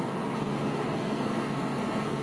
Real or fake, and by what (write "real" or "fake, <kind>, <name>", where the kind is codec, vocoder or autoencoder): fake, codec, SNAC